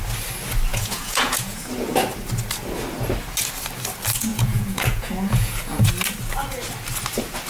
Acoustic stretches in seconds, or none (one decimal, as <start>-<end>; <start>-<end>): 0.0-0.7; 1.7-4.3; 5.9-7.5